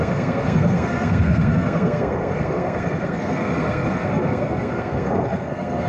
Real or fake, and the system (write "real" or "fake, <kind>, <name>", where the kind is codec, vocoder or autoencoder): fake, codec, SNAC